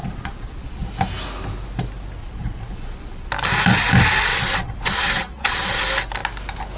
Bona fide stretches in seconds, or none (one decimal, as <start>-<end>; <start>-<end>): 0.9-2.2; 3.3-4.3; 5.8-6.8